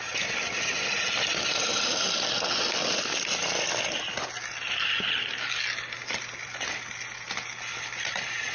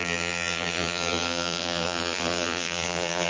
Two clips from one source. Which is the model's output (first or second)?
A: second